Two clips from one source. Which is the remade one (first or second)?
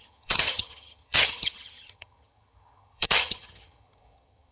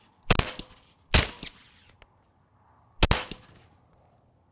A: first